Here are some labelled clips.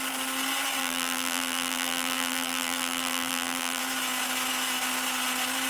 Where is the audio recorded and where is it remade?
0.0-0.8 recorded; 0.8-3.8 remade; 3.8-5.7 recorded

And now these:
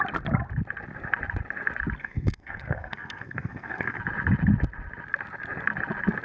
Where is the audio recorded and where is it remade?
0.0-2.0 recorded; 2.0-4.0 remade; 4.0-6.2 recorded

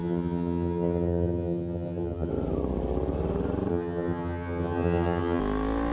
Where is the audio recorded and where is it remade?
0.0-2.3 remade; 2.3-3.7 recorded; 3.7-5.4 remade; 5.4-5.9 recorded

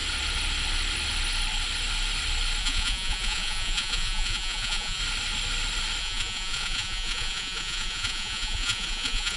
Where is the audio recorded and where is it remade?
0.0-2.6 recorded; 2.6-5.0 remade; 5.0-6.0 recorded; 6.0-9.4 remade

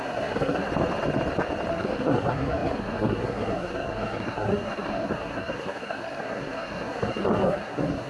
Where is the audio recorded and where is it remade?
0.0-0.7 remade; 0.7-1.7 recorded; 1.7-8.1 remade

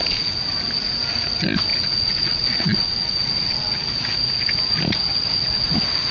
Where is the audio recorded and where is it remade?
0.0-1.7 recorded; 1.7-3.7 remade; 3.7-6.1 recorded